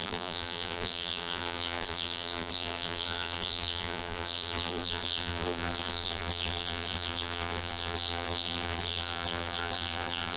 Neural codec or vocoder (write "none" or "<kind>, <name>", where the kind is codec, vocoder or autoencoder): vocoder, BigVGAN v2